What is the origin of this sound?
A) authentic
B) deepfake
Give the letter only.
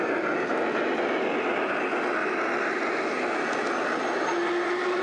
A